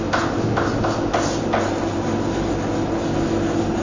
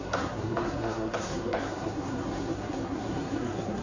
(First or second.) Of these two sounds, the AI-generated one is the second